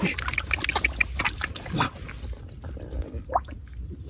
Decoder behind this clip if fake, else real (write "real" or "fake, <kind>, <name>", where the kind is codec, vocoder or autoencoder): real